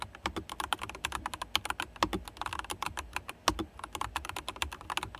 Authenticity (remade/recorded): recorded